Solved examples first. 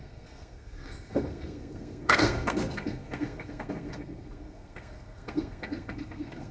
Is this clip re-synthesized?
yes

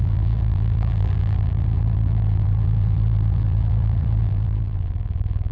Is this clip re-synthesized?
yes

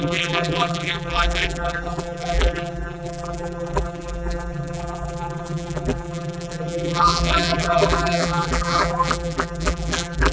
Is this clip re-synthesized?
yes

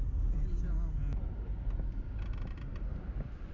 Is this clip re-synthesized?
no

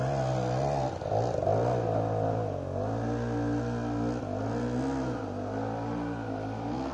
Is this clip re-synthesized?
no